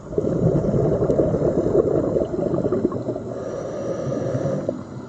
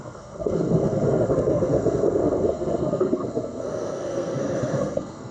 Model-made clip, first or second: second